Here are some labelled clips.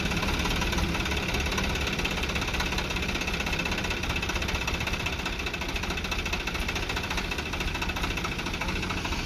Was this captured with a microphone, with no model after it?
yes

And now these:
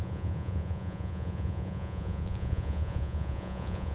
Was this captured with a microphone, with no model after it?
no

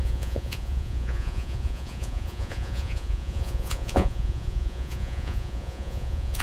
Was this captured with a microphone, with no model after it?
no